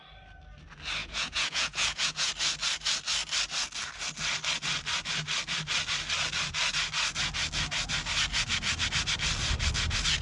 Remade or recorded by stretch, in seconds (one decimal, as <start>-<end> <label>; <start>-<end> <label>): 0.0-1.0 recorded; 1.0-2.3 remade; 2.3-10.2 recorded